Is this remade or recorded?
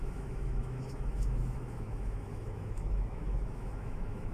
remade